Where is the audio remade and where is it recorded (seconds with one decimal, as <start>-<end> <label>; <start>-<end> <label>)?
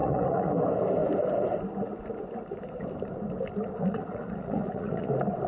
0.0-0.5 remade; 0.5-3.8 recorded; 3.8-5.1 remade; 5.1-5.5 recorded